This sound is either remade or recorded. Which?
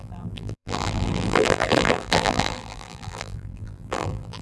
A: remade